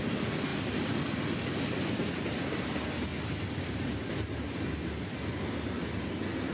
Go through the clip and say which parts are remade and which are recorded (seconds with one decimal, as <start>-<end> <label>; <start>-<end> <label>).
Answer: 0.0-0.5 recorded; 0.5-2.7 remade; 2.7-6.5 recorded